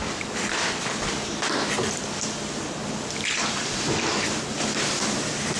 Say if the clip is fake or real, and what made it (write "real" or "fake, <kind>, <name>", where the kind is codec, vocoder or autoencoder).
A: fake, vocoder, BigVGAN v2